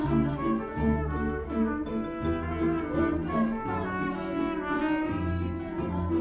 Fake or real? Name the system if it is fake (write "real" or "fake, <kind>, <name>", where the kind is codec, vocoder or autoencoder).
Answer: real